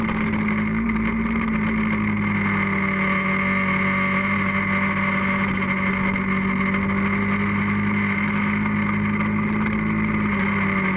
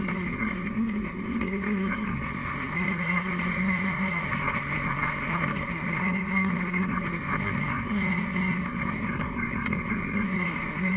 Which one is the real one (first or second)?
first